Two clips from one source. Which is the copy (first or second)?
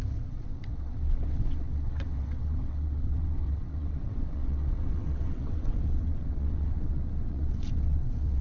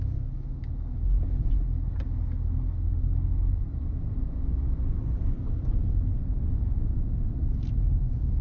first